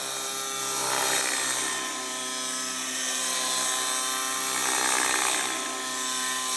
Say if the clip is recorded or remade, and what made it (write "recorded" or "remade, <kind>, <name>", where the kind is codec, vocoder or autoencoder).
recorded